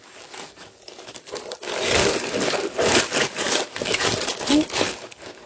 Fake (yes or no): yes